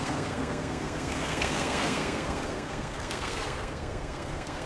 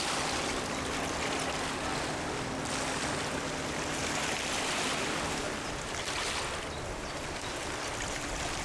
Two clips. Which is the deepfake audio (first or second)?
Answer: first